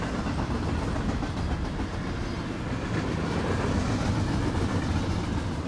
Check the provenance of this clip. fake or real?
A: real